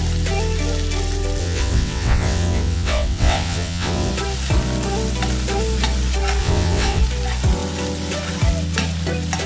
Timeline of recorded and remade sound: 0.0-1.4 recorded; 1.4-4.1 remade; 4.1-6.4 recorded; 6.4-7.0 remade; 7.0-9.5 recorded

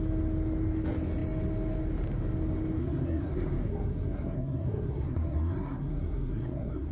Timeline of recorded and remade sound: 0.0-2.8 recorded; 2.8-6.9 remade

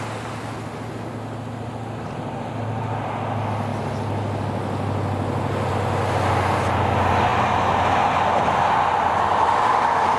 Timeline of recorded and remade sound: 0.0-10.2 recorded

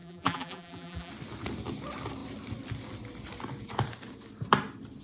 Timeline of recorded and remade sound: 0.0-1.1 remade; 1.1-5.0 recorded

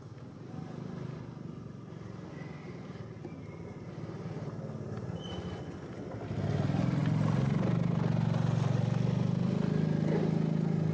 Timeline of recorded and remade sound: 0.0-10.9 recorded